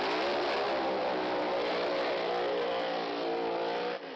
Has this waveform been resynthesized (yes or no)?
no